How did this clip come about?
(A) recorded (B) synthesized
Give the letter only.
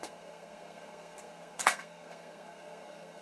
B